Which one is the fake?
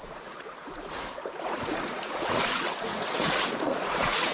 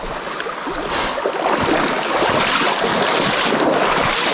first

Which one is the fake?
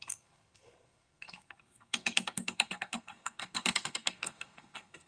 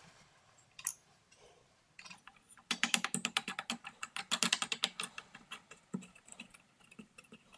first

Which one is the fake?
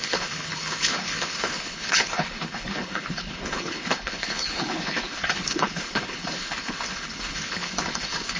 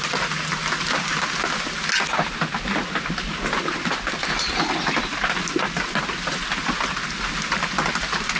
first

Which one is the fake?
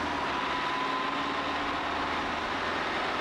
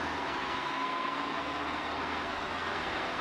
second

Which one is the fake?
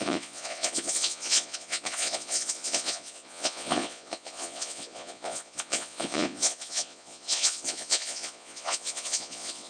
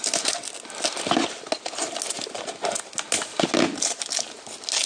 first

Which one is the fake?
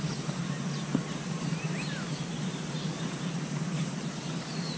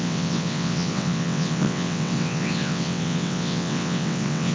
second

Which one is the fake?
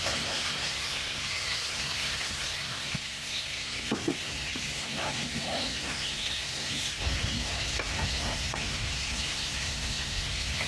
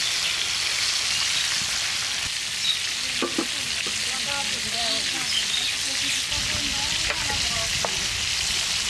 first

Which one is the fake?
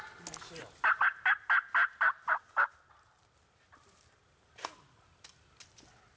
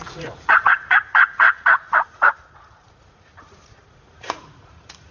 second